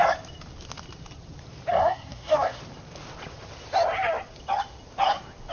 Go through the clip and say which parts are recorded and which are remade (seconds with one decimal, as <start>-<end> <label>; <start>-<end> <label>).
0.0-1.7 recorded; 1.7-2.6 remade; 2.6-5.5 recorded